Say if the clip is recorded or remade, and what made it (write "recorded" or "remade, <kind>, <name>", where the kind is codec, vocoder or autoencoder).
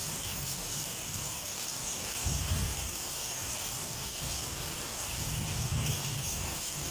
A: remade, codec, DAC